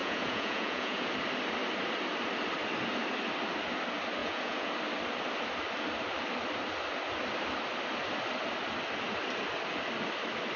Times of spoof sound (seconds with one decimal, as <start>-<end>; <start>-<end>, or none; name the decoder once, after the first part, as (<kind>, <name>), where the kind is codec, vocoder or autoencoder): 0.0-1.1 (vocoder, Vocos); 4.2-4.7